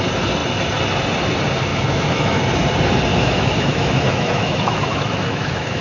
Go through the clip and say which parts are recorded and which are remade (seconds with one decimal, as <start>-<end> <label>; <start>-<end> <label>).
0.0-1.7 recorded; 1.7-2.4 remade; 2.4-3.1 recorded; 3.1-5.8 remade